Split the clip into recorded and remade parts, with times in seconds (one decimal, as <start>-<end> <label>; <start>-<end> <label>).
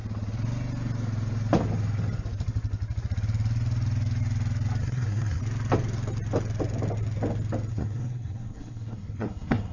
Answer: 0.0-4.8 recorded; 4.8-5.4 remade; 5.4-7.7 recorded; 7.7-9.7 remade